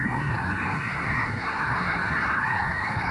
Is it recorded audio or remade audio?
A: remade